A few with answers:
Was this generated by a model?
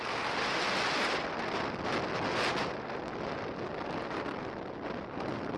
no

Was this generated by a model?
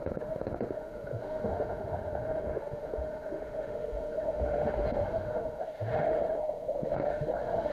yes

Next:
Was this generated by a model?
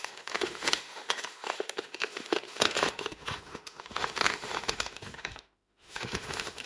yes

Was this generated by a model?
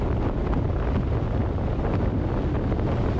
no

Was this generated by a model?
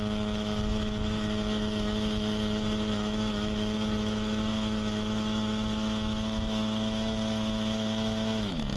yes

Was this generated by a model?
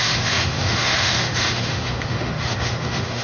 yes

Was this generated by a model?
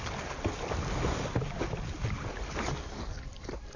no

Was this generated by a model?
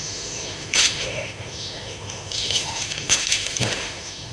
yes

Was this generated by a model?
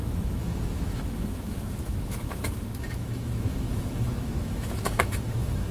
yes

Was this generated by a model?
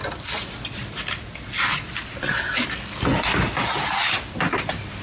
no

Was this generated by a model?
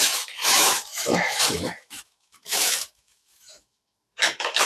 yes